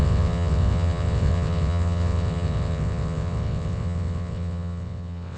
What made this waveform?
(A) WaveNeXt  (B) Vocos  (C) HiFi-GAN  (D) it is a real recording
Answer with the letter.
A